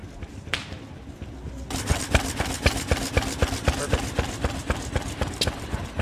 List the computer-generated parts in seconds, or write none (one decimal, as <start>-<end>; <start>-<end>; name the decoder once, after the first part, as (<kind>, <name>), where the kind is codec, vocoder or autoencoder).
none

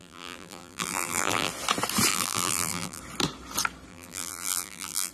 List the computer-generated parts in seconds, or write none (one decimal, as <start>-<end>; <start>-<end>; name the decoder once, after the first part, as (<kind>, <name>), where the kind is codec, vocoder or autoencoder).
0.0-1.5 (vocoder, BigVGAN v2); 2.1-3.0; 3.9-5.1

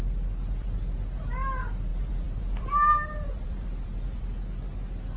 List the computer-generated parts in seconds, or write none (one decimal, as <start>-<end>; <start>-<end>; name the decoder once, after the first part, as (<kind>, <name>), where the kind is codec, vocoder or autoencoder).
1.9-4.2 (vocoder, BigVGAN v2)

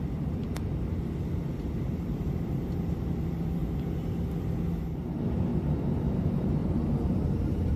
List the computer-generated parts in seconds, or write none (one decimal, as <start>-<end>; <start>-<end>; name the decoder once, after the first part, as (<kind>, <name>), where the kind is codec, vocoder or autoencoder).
0.0-0.4 (vocoder, BigVGAN v2); 1.7-3.6; 4.8-5.5; 6.0-6.6